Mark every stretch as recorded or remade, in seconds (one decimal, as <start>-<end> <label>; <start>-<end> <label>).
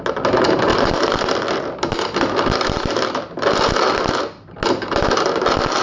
0.0-5.8 recorded